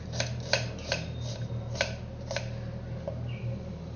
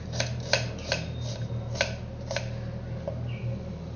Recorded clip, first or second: second